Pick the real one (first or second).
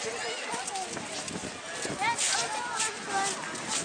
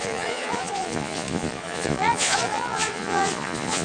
first